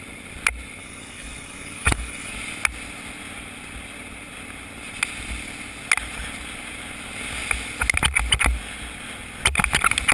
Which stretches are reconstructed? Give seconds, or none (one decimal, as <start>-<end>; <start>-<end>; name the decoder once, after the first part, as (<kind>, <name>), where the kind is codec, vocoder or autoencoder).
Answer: 0.8-2.3 (codec, DAC)